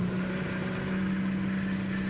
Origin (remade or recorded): recorded